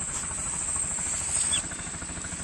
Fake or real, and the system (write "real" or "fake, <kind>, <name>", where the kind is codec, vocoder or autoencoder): real